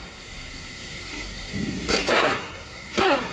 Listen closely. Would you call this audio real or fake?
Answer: fake